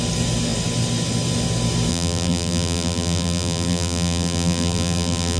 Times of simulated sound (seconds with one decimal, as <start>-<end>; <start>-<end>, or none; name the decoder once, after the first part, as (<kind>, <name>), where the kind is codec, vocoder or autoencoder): 1.9-5.4 (vocoder, BigVGAN v2)